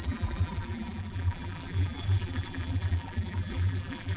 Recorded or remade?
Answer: remade